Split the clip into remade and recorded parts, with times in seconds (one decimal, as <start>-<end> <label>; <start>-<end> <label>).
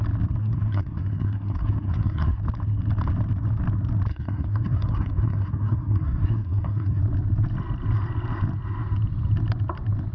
0.0-0.4 recorded; 0.4-2.4 remade; 2.4-4.1 recorded; 4.1-7.0 remade; 7.0-10.1 recorded